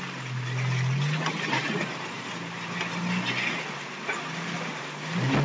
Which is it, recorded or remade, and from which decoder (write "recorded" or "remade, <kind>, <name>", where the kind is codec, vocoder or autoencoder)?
recorded